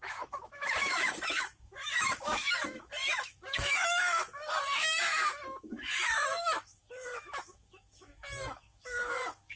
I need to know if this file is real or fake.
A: fake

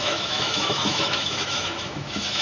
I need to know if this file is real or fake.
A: fake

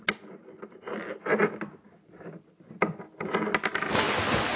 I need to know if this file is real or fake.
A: real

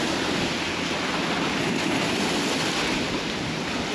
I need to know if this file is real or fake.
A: real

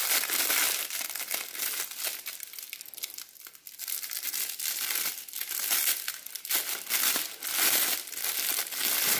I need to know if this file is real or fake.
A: real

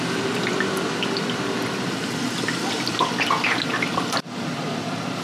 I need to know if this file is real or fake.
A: fake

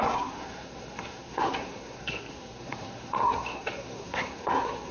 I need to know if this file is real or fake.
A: fake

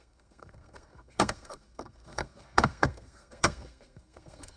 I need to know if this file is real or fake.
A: fake